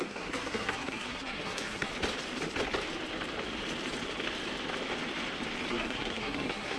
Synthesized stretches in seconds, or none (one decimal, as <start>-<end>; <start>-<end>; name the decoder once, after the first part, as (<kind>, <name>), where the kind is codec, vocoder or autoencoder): 0.0-1.9 (codec, SNAC); 5.7-6.8